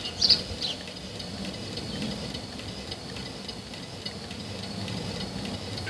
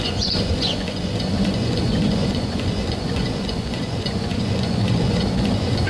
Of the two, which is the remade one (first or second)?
second